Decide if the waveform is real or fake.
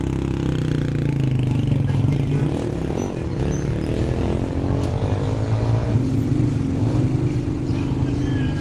real